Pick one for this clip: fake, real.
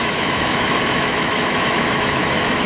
fake